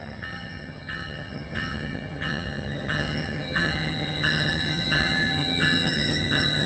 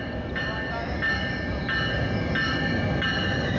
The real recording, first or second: second